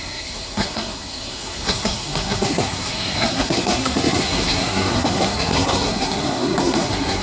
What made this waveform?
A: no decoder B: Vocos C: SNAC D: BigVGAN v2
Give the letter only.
C